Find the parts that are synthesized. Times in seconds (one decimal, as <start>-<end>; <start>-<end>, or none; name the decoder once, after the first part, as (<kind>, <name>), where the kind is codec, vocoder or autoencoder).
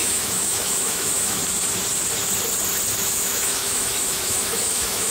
0.0-1.4 (autoencoder, DAC-VAE); 3.0-5.1